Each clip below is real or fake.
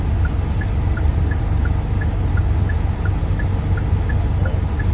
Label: real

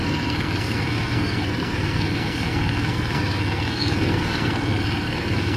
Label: fake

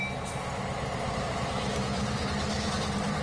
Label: real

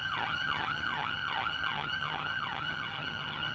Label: fake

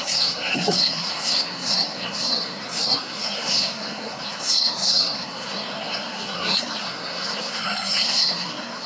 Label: fake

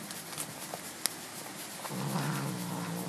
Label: real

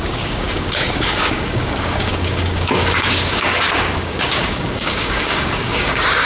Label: fake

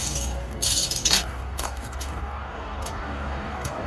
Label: fake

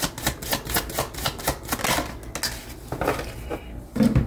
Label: real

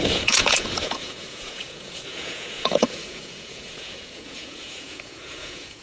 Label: fake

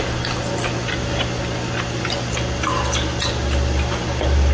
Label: real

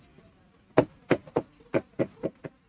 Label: real